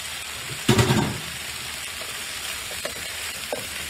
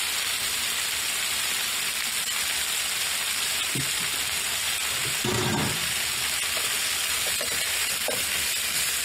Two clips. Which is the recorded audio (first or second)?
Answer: second